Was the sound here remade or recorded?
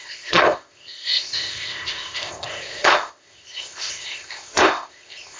remade